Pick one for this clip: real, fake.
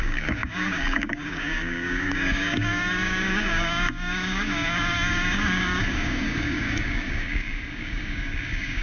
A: fake